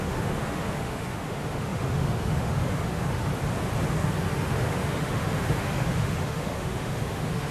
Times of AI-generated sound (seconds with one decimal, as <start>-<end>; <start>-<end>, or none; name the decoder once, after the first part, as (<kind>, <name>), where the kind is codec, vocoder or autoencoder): 0.0-3.3 (autoencoder, DAC-VAE); 3.9-7.5